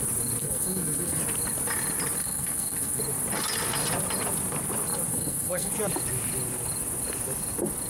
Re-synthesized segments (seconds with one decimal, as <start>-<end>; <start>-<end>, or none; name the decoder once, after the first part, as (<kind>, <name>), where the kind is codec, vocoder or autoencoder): 0.4-1.2 (codec, SNAC); 2.2-3.0; 5.1-5.7

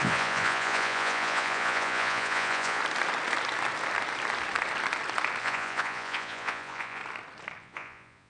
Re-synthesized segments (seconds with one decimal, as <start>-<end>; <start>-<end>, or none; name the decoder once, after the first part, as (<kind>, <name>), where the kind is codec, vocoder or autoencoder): 0.0-2.8 (vocoder, Vocos); 5.4-7.0; 7.6-8.3

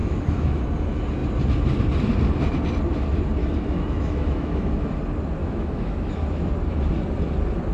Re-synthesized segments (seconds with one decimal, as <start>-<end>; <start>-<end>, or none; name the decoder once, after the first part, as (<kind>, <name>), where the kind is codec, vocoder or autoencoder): 0.0-0.6 (autoencoder, DAC-VAE); 3.4-5.0; 5.4-6.5

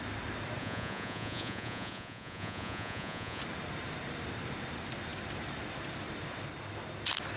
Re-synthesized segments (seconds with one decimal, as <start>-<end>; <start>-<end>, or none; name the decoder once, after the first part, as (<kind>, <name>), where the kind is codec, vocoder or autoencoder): 0.6-3.4 (vocoder, Vocos)

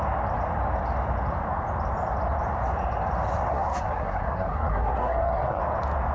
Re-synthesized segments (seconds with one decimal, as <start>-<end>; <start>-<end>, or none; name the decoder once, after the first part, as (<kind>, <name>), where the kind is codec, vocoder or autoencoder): 3.5-5.6 (codec, SNAC)

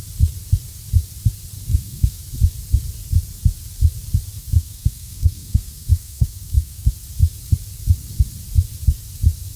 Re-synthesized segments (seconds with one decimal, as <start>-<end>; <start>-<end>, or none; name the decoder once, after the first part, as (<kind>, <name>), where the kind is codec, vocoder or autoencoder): 1.7-2.2 (codec, SNAC); 4.4-6.9

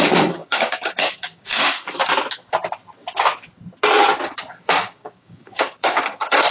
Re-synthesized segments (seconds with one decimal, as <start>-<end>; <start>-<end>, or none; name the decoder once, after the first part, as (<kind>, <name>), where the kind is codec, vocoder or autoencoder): 0.0-2.0 (codec, DAC); 4.5-6.5

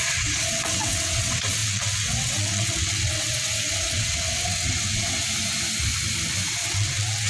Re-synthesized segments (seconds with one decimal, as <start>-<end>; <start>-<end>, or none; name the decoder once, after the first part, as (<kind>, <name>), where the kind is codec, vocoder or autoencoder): 0.0-5.2 (vocoder, WaveNeXt); 6.5-7.3